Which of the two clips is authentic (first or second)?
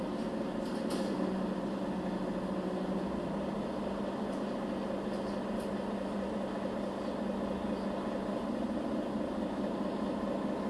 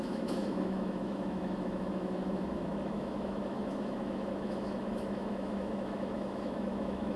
first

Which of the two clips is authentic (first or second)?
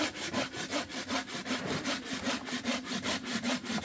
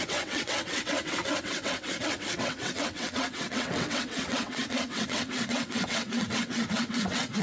first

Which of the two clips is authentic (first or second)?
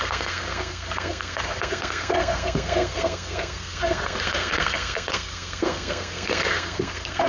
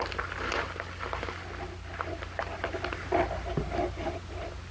second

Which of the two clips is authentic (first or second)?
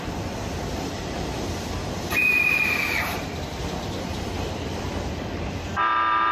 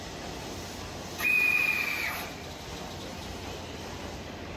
second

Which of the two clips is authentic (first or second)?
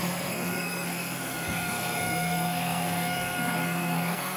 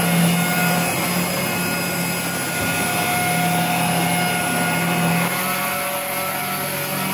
second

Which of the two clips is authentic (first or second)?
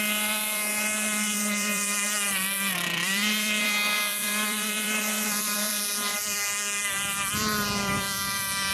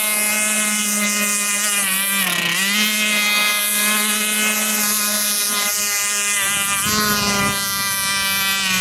second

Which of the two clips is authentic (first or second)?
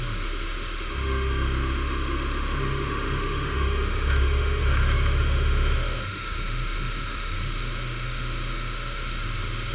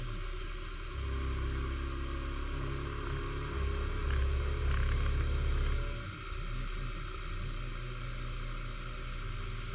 second